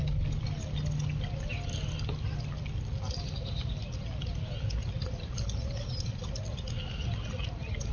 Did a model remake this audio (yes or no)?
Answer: no